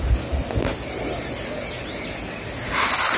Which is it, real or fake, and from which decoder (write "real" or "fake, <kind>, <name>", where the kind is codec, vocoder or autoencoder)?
real